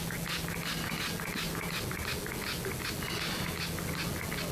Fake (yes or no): no